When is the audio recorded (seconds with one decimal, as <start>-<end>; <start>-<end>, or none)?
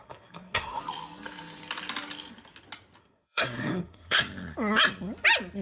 0.8-3.0; 4.2-5.6